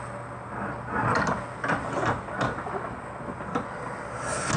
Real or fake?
real